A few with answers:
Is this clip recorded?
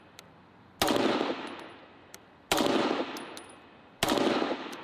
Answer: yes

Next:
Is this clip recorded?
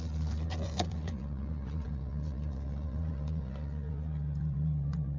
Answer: no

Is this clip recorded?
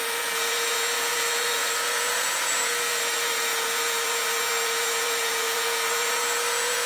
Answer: no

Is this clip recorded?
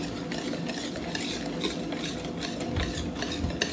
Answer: yes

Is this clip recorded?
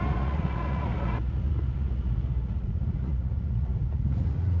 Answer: no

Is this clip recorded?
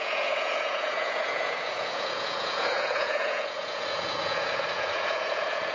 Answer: no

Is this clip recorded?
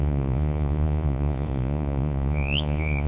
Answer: no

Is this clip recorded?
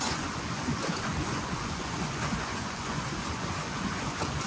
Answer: no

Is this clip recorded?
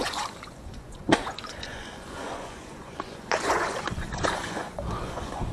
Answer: no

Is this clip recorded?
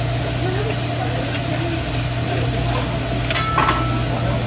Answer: yes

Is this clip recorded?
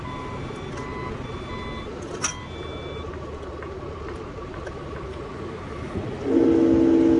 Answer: yes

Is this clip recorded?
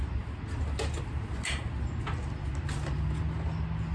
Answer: yes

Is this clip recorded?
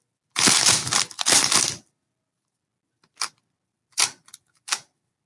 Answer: yes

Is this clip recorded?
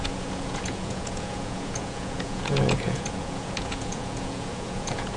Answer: no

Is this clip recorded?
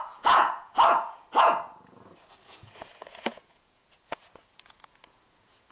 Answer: no